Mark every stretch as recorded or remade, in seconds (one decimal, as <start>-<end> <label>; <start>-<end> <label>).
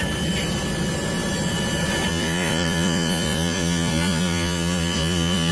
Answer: 0.0-2.1 recorded; 2.1-5.5 remade